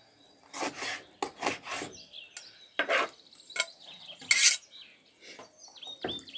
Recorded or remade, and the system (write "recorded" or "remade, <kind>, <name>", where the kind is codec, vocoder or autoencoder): recorded